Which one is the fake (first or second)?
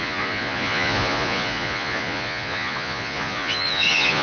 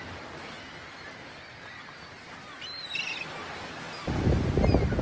first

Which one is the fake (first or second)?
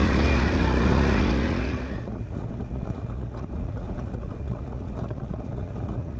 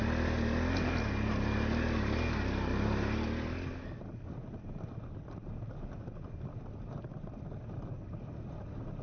first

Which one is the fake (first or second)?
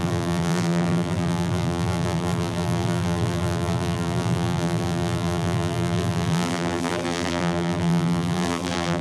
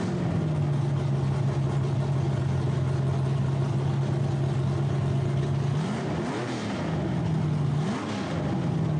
first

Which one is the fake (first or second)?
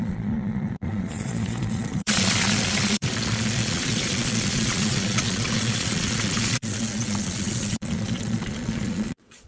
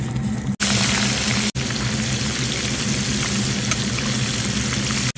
first